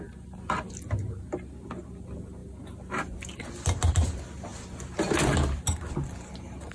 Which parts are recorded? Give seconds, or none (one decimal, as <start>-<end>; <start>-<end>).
0.0-6.7